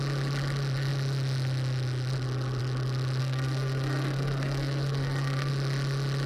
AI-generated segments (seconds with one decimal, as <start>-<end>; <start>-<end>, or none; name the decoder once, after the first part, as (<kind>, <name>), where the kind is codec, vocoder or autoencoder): 3.2-5.5 (codec, SNAC)